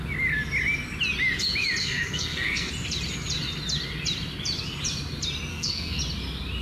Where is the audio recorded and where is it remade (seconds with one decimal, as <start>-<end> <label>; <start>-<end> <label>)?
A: 0.0-1.8 recorded; 1.8-2.7 remade; 2.7-5.5 recorded; 5.5-6.0 remade; 6.0-6.6 recorded